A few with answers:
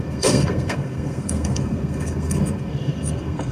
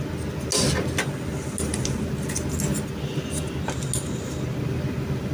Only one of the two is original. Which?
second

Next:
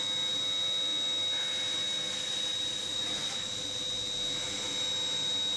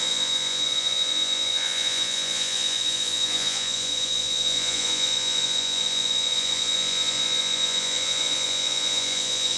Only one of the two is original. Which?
first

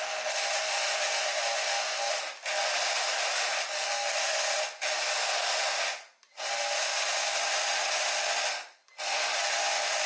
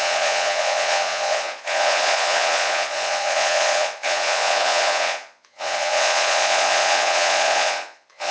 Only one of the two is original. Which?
first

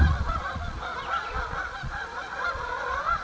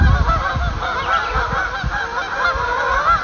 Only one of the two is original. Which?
second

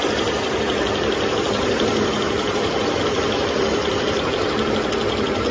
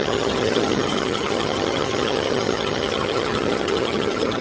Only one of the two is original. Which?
first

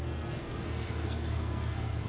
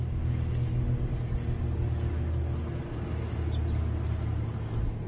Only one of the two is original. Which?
second